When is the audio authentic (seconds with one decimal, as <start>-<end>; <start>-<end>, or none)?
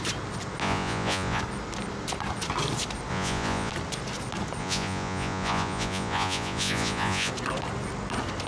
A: 0.0-0.6; 1.4-3.1; 3.7-4.6; 7.3-8.5